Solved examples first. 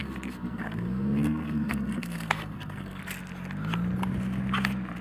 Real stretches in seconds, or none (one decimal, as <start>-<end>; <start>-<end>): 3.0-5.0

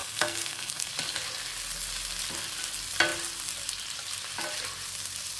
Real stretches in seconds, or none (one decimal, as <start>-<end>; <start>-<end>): 0.9-5.4

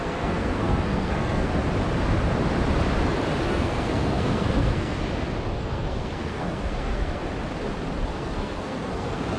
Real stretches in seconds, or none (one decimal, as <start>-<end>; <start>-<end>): 1.5-3.4; 5.0-5.5; 7.2-8.1

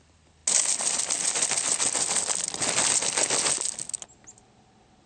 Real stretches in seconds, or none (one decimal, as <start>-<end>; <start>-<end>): 0.0-5.1